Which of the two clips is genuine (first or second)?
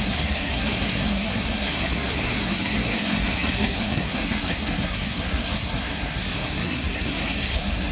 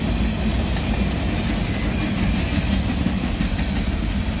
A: second